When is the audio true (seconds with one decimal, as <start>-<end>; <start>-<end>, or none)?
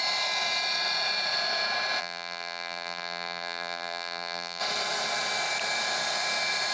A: 0.0-2.0; 4.6-6.7